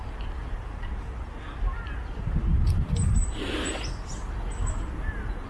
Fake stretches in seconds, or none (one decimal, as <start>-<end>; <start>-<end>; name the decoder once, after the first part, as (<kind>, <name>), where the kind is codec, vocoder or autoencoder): 3.2-4.1 (vocoder, BigVGAN v2)